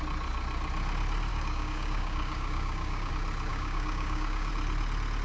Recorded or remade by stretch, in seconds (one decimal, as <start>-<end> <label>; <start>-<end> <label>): 0.0-1.3 recorded; 1.3-3.1 remade; 3.1-3.5 recorded; 3.5-4.5 remade; 4.5-5.2 recorded